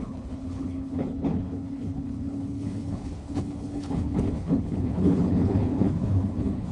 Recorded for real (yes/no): no